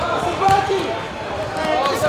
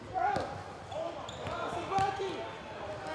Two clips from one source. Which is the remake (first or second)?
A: first